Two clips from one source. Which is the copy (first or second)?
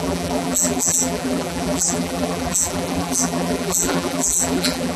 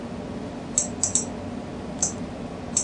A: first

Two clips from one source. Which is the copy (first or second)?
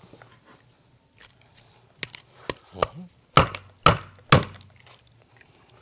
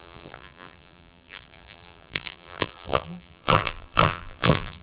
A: second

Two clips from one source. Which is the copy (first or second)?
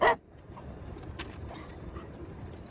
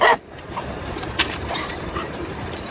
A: second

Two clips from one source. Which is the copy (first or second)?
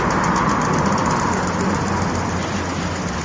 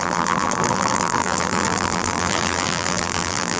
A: second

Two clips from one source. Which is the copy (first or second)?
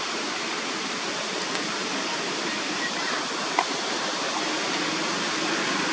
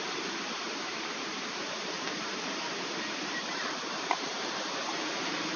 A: second